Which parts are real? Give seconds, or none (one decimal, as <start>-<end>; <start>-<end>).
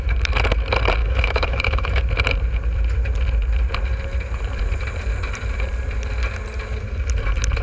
0.0-1.0; 2.0-7.6